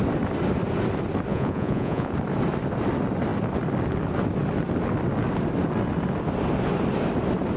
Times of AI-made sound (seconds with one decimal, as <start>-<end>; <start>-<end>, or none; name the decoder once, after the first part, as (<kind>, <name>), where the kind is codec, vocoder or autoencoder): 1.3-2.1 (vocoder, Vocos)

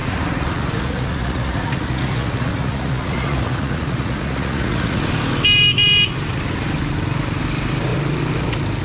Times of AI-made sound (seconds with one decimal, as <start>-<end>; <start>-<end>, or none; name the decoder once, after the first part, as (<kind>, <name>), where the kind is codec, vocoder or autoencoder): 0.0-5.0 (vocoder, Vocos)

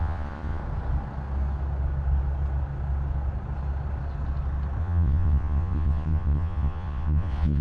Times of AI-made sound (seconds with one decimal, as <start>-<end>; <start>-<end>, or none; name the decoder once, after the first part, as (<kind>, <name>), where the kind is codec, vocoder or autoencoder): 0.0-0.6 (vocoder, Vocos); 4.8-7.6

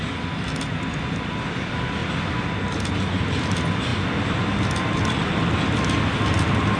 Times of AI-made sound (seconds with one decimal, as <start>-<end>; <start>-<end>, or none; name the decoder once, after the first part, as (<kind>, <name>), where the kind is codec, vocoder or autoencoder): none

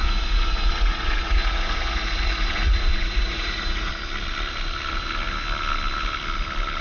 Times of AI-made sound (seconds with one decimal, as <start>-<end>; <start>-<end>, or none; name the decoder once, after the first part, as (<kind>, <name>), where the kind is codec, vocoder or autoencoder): 0.0-3.9 (vocoder, Vocos)